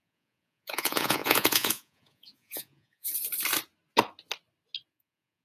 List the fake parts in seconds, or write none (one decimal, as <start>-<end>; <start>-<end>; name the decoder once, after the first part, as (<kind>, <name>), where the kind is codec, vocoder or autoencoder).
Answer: 0.0-3.1 (vocoder, Vocos); 4.9-5.4